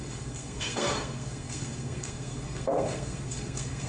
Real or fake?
fake